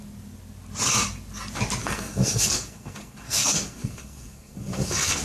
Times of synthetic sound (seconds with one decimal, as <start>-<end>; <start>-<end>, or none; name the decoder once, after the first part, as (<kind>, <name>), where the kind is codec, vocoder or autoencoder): 1.8-5.2 (codec, SNAC)